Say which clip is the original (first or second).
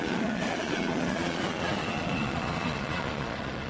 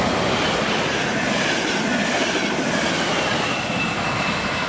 second